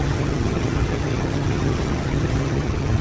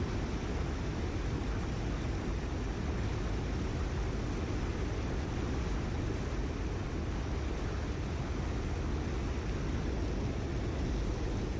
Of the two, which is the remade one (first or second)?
first